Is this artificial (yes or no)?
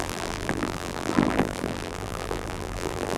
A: yes